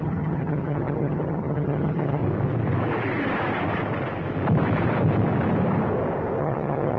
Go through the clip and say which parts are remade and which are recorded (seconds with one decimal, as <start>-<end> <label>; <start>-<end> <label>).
0.0-2.2 remade; 2.2-6.4 recorded; 6.4-7.0 remade

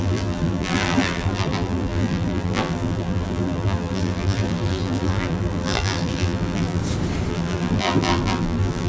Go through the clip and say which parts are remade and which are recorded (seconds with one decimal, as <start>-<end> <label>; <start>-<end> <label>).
0.0-6.8 remade; 6.8-7.3 recorded; 7.3-8.9 remade

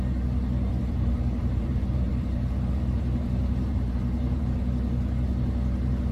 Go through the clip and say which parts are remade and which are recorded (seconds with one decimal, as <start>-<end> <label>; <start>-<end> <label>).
0.0-0.7 recorded; 0.7-4.4 remade; 4.4-6.1 recorded

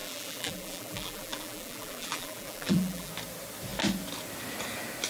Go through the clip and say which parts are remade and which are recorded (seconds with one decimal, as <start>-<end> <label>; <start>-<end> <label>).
0.0-3.1 remade; 3.1-5.1 recorded

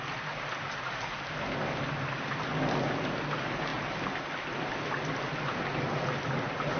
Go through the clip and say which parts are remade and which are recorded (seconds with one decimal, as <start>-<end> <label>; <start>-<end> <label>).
0.0-6.8 recorded